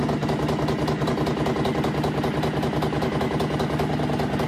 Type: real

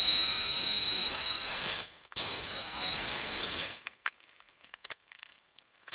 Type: fake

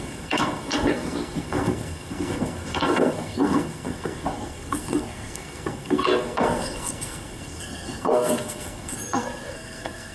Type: fake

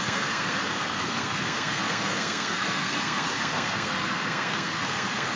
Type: fake